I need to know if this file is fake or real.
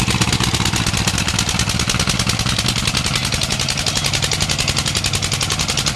real